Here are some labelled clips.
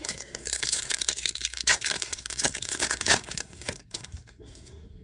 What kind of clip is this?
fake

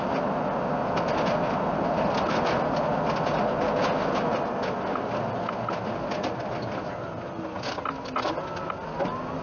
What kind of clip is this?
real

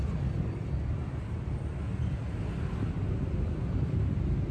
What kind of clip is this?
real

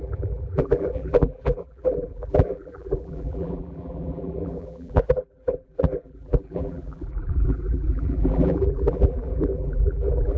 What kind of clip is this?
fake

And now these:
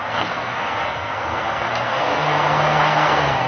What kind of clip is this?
fake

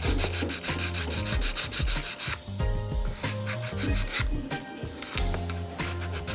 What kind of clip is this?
real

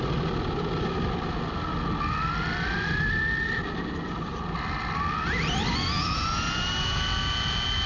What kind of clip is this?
real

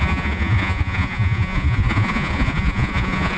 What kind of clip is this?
fake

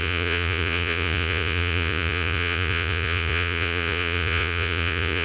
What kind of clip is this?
fake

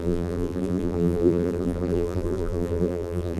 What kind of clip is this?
fake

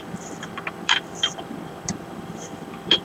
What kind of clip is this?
fake